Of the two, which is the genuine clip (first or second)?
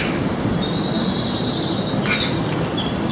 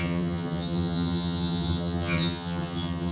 first